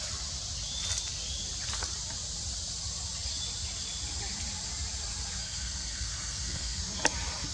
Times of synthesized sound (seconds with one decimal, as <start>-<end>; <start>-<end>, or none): 5.4-6.8